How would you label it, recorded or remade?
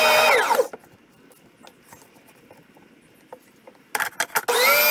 recorded